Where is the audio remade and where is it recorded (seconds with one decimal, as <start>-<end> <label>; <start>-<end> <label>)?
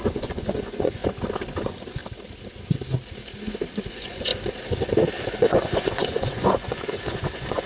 0.0-1.0 remade; 1.0-1.6 recorded; 1.6-2.0 remade; 2.0-3.9 recorded; 3.9-4.3 remade; 4.3-5.3 recorded; 5.3-7.7 remade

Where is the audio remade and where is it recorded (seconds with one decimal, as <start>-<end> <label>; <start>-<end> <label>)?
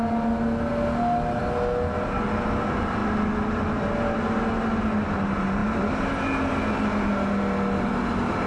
0.0-8.5 recorded